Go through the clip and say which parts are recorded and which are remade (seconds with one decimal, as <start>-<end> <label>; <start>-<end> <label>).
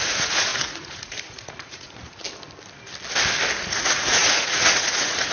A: 0.0-2.2 remade; 2.2-3.6 recorded; 3.6-5.3 remade